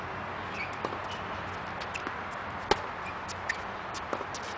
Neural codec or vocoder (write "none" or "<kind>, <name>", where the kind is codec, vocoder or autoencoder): none